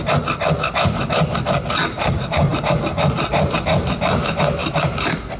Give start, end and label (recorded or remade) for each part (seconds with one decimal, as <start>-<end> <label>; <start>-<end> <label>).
0.0-5.4 recorded